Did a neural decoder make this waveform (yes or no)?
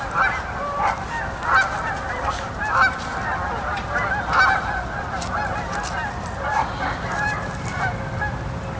no